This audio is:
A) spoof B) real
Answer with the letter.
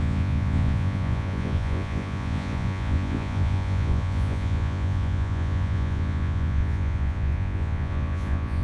A